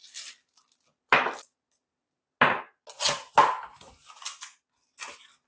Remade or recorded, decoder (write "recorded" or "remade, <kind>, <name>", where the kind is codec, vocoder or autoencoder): recorded